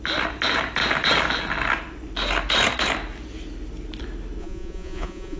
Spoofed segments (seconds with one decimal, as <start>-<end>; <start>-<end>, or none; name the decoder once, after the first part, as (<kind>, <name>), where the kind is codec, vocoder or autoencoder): 4.4-5.4 (vocoder, Vocos)